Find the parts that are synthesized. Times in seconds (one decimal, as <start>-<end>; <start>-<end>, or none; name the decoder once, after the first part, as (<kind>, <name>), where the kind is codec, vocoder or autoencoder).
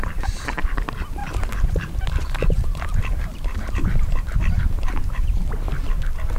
0.0-5.6 (vocoder, BigVGAN v2)